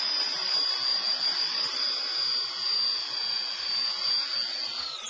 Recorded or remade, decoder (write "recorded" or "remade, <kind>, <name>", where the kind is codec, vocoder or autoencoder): recorded